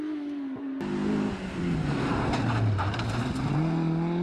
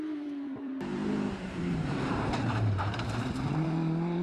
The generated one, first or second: second